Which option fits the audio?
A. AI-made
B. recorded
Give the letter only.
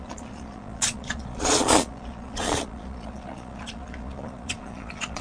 A